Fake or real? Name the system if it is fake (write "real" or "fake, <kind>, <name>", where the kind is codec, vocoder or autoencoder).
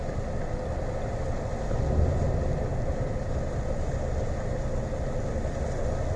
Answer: real